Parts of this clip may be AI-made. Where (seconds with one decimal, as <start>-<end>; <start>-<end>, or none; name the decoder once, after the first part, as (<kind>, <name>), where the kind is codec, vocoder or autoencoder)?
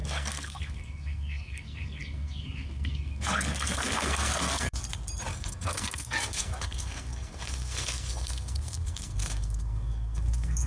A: 0.0-4.8 (codec, SNAC); 5.3-10.7